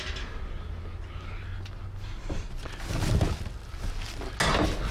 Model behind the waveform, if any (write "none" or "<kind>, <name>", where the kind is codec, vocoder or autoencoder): none